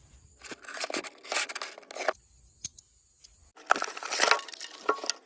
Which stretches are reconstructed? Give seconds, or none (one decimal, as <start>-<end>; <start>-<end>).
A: none